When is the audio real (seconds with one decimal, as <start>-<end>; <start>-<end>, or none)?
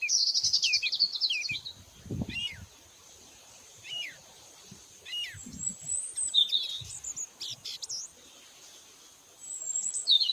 0.0-2.4; 5.0-10.3